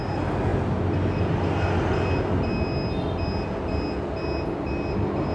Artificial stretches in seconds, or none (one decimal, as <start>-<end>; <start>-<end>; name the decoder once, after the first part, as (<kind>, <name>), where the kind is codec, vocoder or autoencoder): none